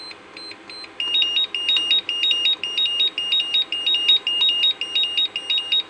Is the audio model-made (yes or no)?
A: no